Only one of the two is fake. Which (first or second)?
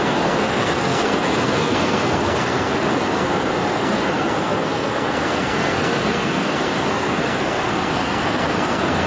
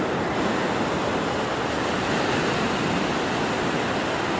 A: first